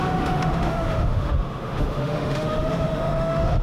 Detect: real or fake fake